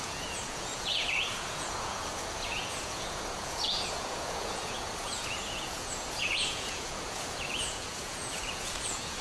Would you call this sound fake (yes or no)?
yes